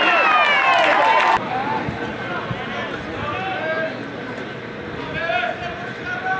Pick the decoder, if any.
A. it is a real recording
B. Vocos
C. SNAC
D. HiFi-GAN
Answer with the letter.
A